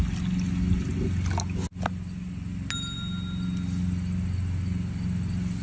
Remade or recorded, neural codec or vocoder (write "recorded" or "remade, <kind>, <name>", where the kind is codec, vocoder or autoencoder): recorded